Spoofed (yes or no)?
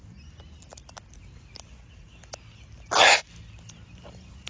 no